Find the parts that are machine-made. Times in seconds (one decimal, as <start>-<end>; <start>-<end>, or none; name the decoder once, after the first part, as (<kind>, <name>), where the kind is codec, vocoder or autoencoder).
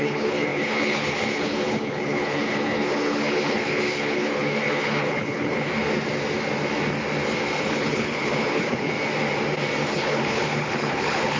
0.0-5.7 (codec, HILCodec); 7.5-8.9; 9.9-11.4